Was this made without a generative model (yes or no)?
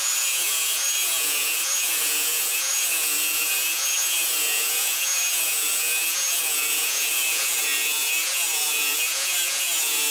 no